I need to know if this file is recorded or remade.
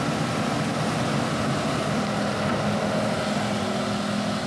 recorded